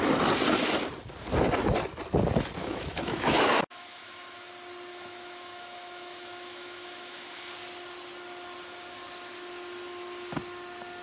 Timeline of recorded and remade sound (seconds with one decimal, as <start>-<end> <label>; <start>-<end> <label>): 0.0-2.6 recorded; 2.6-4.5 remade; 4.5-4.9 recorded; 4.9-7.5 remade; 7.5-11.0 recorded